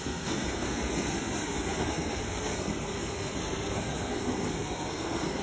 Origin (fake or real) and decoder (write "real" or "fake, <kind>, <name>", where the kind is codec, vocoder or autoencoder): fake, codec, SNAC